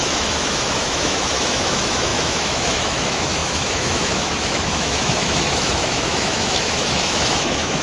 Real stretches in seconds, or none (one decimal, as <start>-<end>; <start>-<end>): none